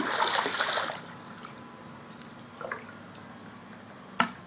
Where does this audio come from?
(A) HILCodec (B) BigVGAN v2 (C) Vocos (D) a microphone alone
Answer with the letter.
D